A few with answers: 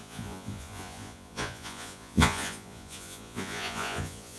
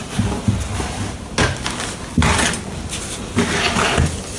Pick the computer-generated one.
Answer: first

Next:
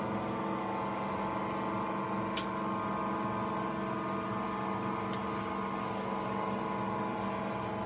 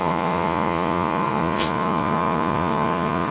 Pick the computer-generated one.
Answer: second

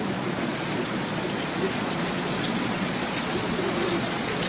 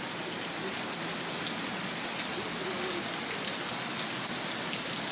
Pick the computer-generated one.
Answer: first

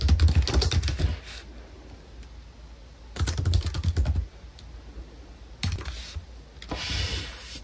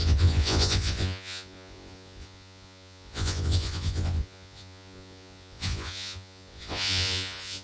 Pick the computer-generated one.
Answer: second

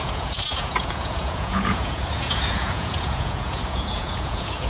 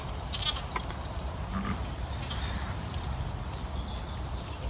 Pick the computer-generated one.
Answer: first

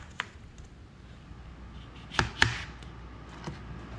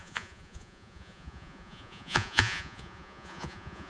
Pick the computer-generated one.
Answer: second